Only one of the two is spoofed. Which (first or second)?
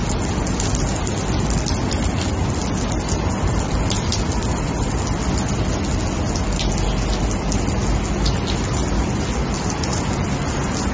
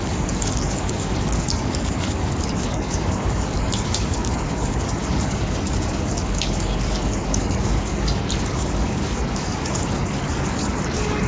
second